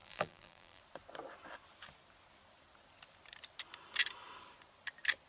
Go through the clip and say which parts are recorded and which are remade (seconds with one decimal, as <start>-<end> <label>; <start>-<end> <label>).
0.0-0.8 remade; 0.8-5.3 recorded